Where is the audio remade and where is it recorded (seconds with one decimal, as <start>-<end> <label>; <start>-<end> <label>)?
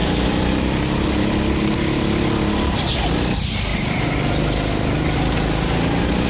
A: 0.0-6.3 recorded